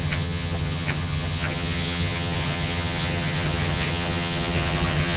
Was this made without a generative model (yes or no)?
no